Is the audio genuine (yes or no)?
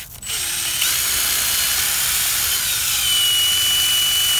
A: yes